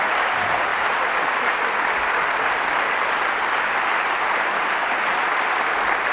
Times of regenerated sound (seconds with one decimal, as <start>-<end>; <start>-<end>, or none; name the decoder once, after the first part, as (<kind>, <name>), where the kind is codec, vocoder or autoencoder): 0.0-0.7 (vocoder, BigVGAN v2); 4.4-5.3